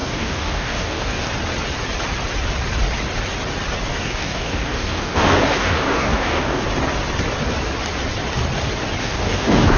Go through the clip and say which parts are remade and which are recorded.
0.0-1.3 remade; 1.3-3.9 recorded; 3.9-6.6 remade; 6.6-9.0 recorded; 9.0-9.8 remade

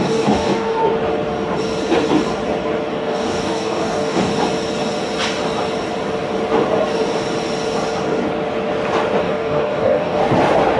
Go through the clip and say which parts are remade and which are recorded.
0.0-0.8 remade; 0.8-2.9 recorded; 2.9-4.3 remade; 4.3-9.2 recorded; 9.2-10.2 remade; 10.2-10.8 recorded